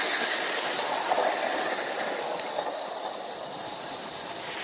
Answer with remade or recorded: recorded